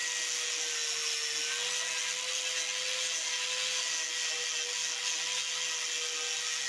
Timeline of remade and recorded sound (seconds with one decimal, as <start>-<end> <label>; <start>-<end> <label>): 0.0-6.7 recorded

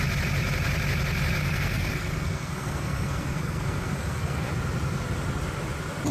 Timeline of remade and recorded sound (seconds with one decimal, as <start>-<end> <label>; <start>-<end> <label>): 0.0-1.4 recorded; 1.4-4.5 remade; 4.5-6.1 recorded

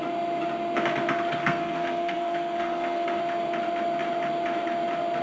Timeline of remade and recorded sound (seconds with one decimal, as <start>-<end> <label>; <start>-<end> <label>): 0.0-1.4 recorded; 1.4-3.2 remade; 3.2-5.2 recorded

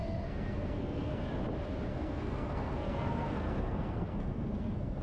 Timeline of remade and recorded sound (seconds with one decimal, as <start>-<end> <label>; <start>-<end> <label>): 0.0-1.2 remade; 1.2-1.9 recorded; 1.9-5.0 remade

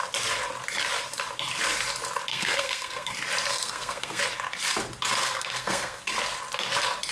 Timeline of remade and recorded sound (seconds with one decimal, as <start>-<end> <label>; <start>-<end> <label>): 0.0-2.3 recorded; 2.3-3.1 remade; 3.1-3.5 recorded; 3.5-4.2 remade; 4.2-5.2 recorded; 5.2-6.0 remade; 6.0-7.1 recorded

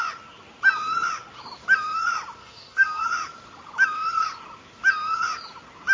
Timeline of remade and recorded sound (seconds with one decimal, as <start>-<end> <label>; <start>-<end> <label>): 0.0-2.4 recorded; 2.4-3.0 remade; 3.0-5.9 recorded